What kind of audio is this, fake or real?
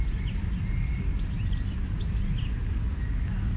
real